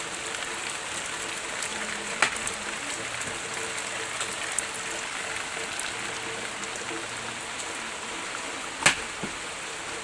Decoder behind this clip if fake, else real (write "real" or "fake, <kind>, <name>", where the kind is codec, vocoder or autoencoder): real